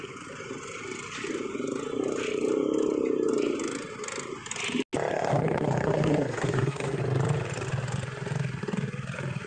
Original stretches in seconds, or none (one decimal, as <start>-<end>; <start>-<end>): 0.0-5.1; 7.0-9.5